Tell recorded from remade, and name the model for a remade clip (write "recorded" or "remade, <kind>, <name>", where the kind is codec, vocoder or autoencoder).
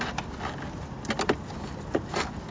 recorded